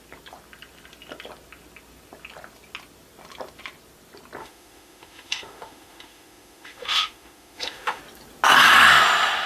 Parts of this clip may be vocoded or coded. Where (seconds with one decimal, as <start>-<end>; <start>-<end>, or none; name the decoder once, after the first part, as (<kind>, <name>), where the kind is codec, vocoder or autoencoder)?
4.4-8.0 (autoencoder, DAC-VAE)